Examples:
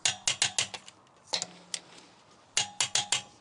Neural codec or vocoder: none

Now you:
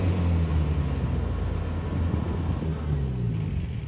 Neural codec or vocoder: none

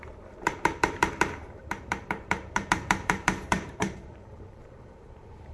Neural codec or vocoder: vocoder, BigVGAN v2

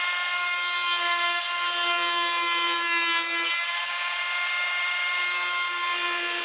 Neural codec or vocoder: none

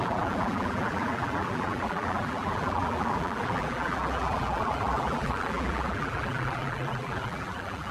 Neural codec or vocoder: vocoder, BigVGAN v2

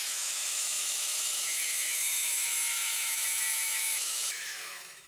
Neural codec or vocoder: autoencoder, DAC-VAE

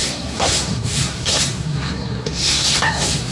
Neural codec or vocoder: codec, SNAC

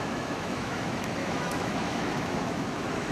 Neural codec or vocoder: autoencoder, DAC-VAE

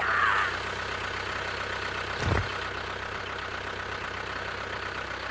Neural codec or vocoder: none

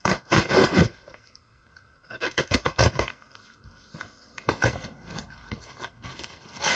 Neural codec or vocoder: codec, SNAC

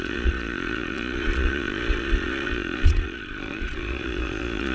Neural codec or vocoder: vocoder, Vocos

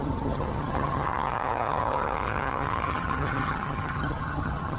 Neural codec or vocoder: vocoder, HiFi-GAN